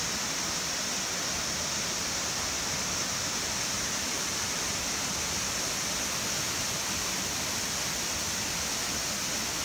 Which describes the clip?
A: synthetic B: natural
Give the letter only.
B